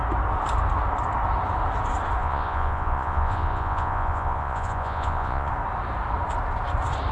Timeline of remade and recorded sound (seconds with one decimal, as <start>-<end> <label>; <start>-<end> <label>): 0.0-2.2 recorded; 2.2-5.5 remade; 5.5-7.1 recorded